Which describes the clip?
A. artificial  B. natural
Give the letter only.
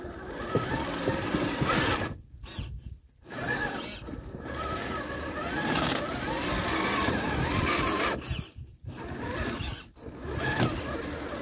B